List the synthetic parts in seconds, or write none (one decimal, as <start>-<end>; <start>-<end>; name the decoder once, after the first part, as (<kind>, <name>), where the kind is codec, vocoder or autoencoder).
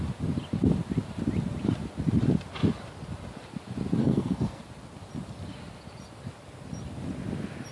4.0-4.6 (codec, SNAC)